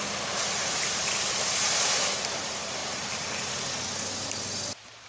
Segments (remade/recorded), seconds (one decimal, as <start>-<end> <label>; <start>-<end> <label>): 0.0-2.8 remade; 2.8-5.1 recorded